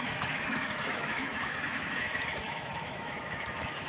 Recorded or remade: remade